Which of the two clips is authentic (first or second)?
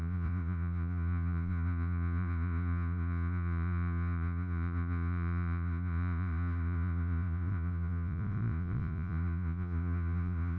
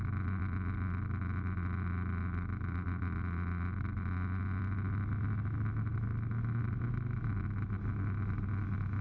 second